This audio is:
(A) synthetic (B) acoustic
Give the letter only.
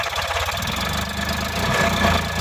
B